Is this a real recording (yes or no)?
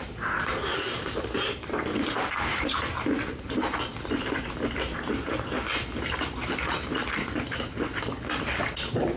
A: no